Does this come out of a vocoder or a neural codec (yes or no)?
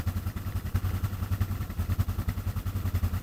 no